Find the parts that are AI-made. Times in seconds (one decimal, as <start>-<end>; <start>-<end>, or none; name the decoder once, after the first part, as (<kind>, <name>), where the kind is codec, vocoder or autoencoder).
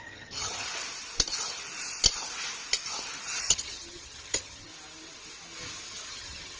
0.0-0.7 (vocoder, HiFi-GAN); 3.4-4.7; 6.1-6.6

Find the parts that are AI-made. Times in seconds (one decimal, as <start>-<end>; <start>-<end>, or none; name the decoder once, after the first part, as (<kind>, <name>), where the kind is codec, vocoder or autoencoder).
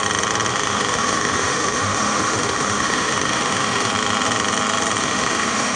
0.5-3.9 (autoencoder, DAC-VAE); 5.0-5.8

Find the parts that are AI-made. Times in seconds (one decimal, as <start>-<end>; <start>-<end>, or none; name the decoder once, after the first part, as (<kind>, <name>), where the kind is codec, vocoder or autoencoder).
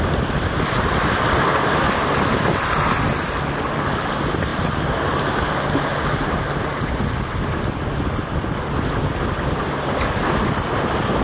none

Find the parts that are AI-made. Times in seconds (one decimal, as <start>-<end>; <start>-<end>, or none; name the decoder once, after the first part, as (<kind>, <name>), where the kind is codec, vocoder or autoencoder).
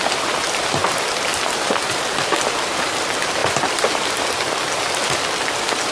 3.4-4.4 (vocoder, BigVGAN v2)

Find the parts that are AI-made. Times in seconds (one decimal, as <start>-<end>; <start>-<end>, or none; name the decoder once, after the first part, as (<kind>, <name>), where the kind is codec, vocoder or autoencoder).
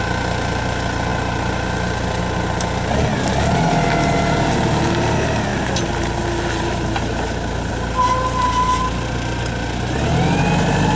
none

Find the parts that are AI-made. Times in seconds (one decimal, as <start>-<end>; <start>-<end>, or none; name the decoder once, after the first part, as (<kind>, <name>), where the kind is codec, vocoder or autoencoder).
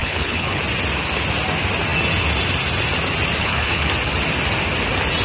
0.0-0.6 (codec, HILCodec); 3.4-3.9